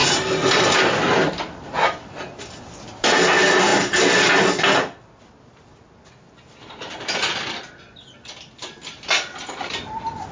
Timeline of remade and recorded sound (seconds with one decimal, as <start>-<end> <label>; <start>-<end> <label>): 0.0-10.3 recorded